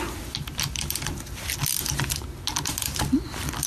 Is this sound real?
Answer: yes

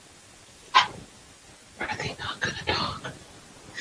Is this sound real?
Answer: yes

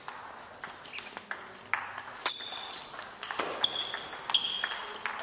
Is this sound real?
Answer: yes